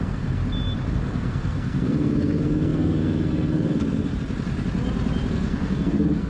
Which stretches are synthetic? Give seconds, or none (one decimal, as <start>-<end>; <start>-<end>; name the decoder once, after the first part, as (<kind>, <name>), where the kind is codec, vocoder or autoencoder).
0.0-0.4 (codec, SNAC); 0.9-4.1; 5.3-6.3